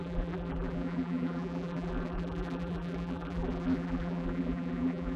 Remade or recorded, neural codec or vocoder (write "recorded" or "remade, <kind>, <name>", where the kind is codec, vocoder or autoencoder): remade, vocoder, BigVGAN v2